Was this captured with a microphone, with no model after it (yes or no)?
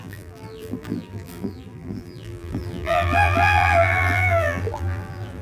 no